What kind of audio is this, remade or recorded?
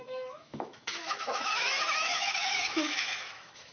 remade